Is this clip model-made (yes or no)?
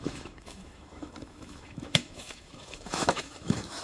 yes